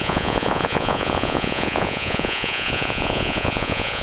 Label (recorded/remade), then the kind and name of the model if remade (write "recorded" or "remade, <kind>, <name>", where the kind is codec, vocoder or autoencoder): remade, vocoder, Vocos